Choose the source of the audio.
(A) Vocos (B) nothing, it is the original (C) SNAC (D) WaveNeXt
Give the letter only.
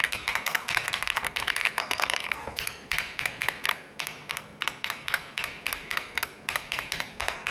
C